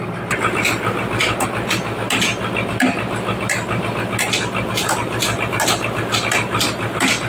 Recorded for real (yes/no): yes